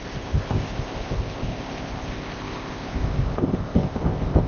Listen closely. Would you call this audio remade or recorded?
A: remade